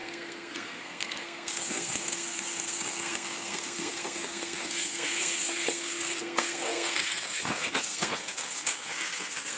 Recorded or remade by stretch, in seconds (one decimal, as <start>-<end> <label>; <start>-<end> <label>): 0.0-9.6 remade